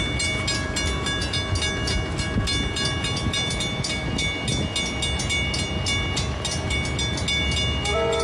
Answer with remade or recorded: recorded